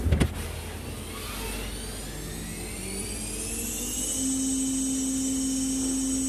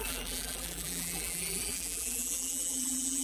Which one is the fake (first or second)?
second